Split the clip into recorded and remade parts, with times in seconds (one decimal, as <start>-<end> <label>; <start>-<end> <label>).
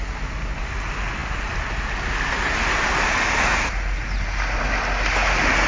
0.0-5.7 recorded